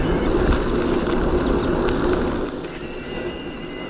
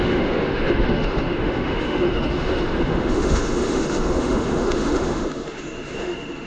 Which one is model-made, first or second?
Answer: second